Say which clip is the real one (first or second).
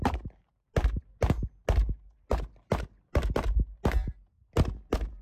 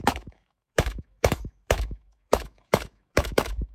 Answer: first